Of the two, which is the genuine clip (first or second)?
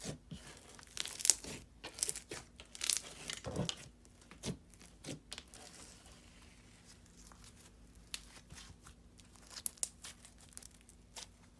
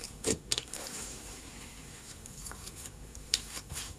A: first